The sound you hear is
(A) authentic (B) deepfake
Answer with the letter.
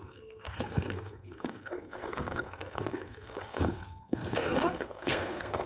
B